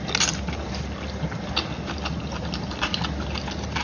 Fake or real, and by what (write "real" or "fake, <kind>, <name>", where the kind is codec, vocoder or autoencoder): real